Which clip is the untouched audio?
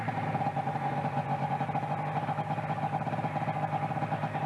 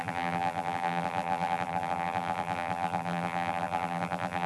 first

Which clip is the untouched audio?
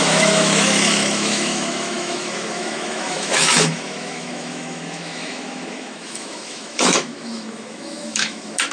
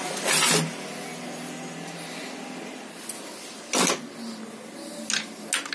second